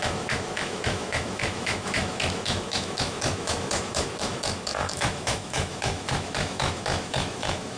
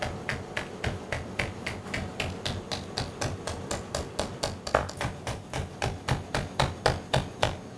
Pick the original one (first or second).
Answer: second